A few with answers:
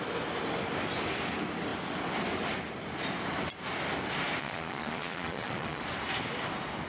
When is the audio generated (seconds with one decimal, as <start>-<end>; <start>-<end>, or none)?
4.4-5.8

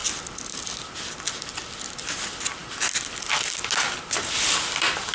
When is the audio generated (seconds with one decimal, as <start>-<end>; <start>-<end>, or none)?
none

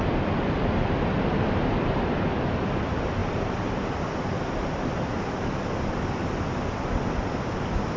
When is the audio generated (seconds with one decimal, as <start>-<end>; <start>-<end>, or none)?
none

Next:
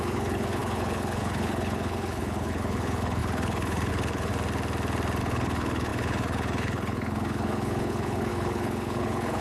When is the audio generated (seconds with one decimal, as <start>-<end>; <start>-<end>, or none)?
0.0-4.3; 5.2-9.4